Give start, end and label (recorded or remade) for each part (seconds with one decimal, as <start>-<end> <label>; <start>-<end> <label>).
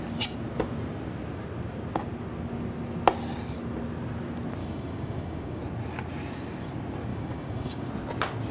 0.0-4.6 recorded; 4.6-5.6 remade; 5.6-7.1 recorded; 7.1-7.9 remade; 7.9-8.5 recorded